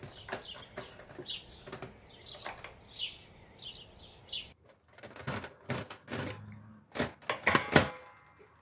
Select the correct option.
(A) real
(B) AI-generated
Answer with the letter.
A